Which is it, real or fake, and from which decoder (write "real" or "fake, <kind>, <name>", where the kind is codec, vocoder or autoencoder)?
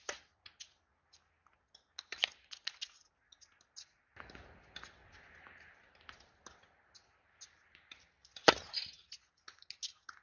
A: real